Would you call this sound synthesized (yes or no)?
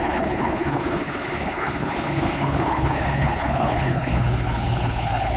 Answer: yes